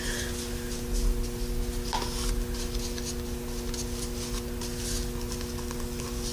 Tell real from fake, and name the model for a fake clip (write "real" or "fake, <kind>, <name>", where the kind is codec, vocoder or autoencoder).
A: real